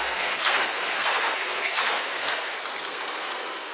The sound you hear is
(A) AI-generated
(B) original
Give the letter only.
A